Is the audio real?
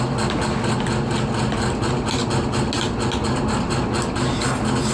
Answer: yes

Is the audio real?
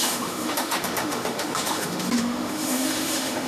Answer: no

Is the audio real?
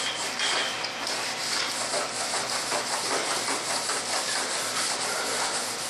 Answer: yes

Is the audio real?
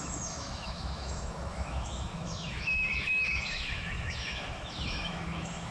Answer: no